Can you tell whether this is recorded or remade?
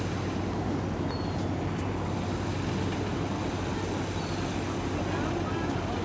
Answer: recorded